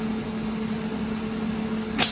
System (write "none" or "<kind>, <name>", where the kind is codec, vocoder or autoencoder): none